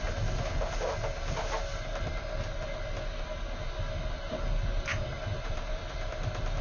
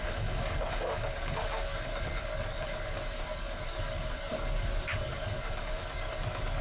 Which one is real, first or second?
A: first